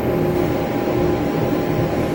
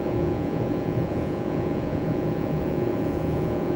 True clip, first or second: first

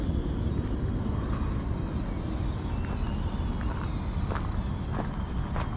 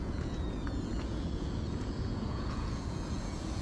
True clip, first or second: first